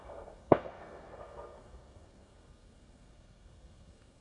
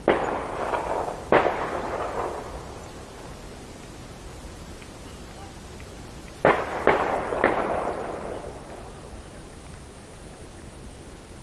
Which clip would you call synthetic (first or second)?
first